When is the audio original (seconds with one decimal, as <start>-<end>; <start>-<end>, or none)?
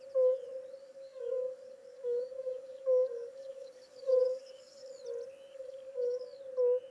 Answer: 0.0-0.8; 4.9-5.5; 6.4-6.9